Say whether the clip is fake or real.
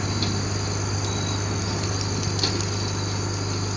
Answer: real